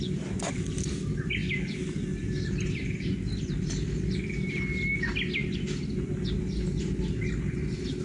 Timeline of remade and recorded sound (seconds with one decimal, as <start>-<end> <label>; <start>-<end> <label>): 0.0-8.0 recorded